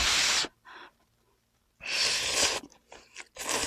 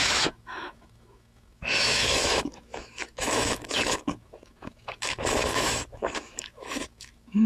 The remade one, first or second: second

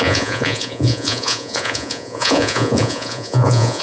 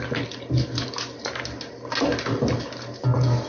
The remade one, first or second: first